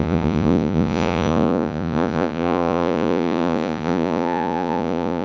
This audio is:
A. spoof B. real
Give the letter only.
A